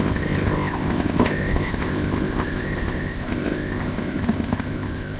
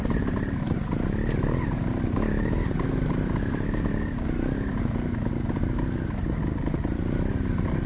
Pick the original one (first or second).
second